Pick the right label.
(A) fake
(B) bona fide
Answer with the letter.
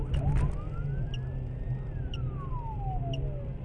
B